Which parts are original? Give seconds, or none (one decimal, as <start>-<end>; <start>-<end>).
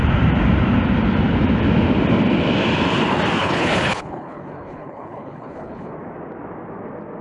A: 0.0-3.4; 5.9-7.2